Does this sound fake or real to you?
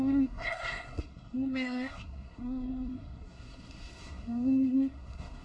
fake